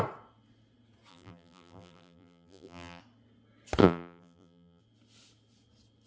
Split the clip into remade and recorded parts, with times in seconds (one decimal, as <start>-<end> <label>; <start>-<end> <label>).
0.0-1.1 recorded; 1.1-3.0 remade; 3.0-3.8 recorded; 3.8-4.8 remade; 4.8-6.1 recorded